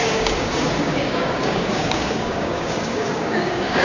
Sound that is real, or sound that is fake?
fake